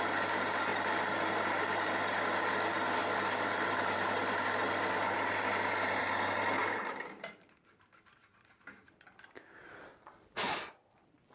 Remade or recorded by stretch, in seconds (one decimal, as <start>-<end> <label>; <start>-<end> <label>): 0.0-0.7 recorded; 0.7-2.0 remade; 2.0-3.0 recorded; 3.0-6.0 remade; 6.0-6.6 recorded; 6.6-9.9 remade; 9.9-11.3 recorded

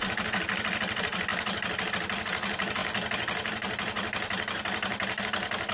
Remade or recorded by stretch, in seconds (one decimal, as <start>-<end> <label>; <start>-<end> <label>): 0.0-5.7 remade

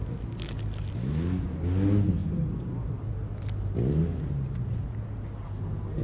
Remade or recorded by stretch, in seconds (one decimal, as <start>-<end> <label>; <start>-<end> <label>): 0.0-2.2 recorded; 2.2-4.9 remade; 4.9-6.0 recorded

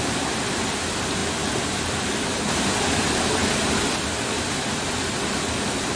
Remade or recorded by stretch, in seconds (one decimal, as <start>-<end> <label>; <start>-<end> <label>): 0.0-1.2 recorded; 1.2-2.7 remade; 2.7-6.0 recorded

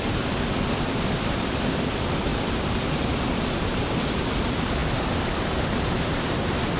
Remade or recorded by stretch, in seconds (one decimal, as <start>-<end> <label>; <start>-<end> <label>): 0.0-6.8 remade

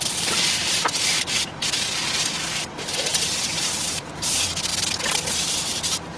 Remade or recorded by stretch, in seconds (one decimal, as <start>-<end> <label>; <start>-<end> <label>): 0.0-3.1 recorded; 3.1-4.0 remade; 4.0-6.2 recorded

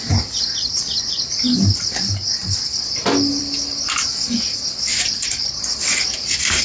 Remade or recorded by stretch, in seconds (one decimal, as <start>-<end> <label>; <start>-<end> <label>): 0.0-6.6 recorded